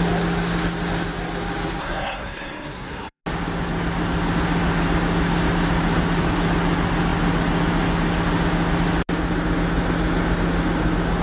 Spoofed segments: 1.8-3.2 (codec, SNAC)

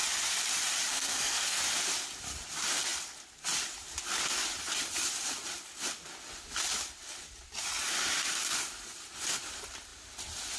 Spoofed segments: 0.9-1.6 (codec, SNAC)

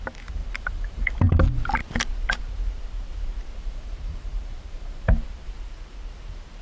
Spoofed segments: 0.4-1.3 (vocoder, BigVGAN v2); 3.5-5.3

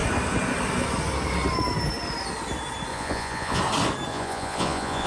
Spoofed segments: 2.9-3.6 (vocoder, Vocos); 4.1-5.1

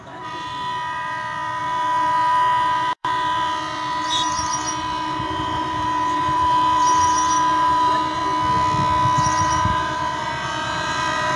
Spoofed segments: 0.0-8.2 (vocoder, BigVGAN v2); 9.4-11.4

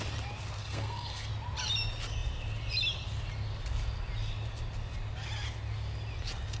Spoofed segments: 0.6-1.3 (codec, SNAC)

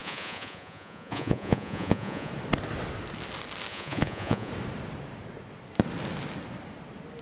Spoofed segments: 0.0-2.3 (vocoder, Vocos); 3.7-4.5

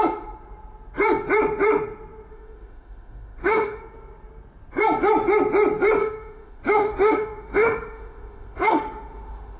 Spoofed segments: 2.3-3.8 (autoencoder, DAC-VAE); 6.0-9.6